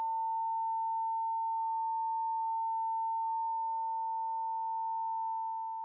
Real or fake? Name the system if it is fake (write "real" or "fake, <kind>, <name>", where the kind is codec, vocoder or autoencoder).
real